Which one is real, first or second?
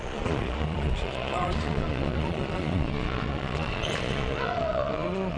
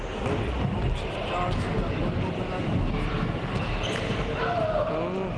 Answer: second